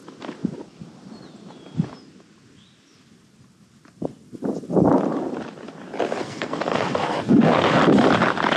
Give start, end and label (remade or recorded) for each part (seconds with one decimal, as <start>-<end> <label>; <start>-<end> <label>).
0.0-6.2 recorded; 6.2-7.8 remade; 7.8-8.6 recorded

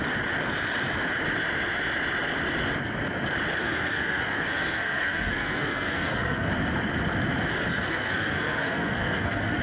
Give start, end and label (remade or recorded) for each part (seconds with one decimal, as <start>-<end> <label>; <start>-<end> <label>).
0.0-3.6 recorded; 3.6-6.5 remade; 6.5-7.7 recorded; 7.7-9.6 remade